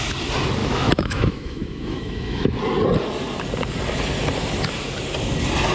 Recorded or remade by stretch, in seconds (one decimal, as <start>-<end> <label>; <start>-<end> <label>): 0.0-0.6 recorded; 0.6-2.6 remade; 2.6-5.7 recorded

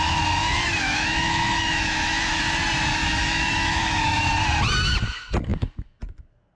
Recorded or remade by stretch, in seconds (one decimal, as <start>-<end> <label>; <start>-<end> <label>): 0.0-0.4 recorded; 0.4-2.4 remade; 2.4-3.0 recorded; 3.0-4.3 remade; 4.3-6.6 recorded

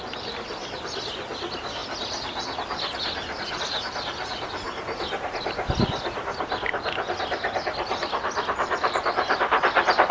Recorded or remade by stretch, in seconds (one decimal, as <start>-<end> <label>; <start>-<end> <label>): 0.0-10.1 recorded